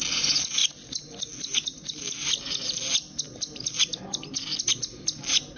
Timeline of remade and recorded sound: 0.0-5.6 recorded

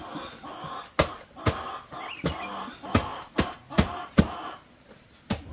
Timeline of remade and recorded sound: 0.0-3.1 recorded; 3.1-4.2 remade; 4.2-5.5 recorded